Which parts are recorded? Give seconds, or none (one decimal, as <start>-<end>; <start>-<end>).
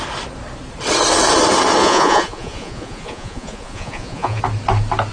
0.0-1.8; 4.4-5.1